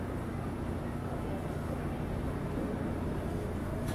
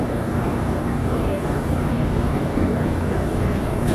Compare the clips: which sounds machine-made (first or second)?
second